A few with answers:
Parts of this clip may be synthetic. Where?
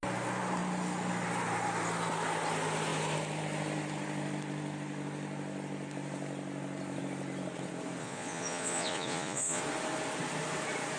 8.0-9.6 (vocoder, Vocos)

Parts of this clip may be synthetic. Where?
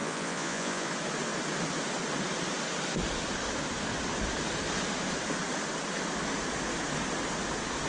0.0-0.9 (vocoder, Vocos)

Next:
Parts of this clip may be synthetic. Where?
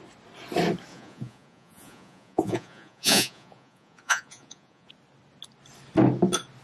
0.9-4.9 (vocoder, Vocos)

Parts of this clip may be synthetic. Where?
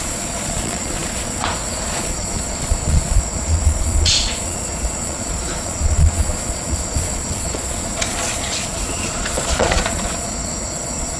0.0-11.2 (vocoder, Vocos)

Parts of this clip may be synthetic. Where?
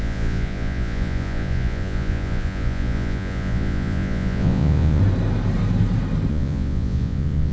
0.0-5.0 (vocoder, Vocos); 6.3-7.5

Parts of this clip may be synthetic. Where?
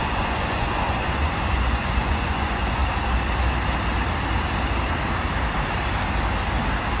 0.0-2.8 (vocoder, Vocos)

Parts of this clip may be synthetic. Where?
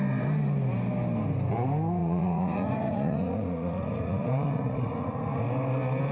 2.0-5.4 (vocoder, Vocos)